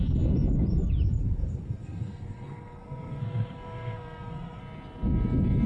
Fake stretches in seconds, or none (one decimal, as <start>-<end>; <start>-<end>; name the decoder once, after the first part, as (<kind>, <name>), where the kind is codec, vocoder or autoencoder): 1.2-4.6 (codec, SNAC)